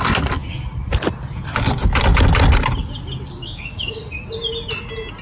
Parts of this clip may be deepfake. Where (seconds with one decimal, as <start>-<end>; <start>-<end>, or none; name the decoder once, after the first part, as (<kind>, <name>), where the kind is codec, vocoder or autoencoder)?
3.4-4.0 (codec, DAC)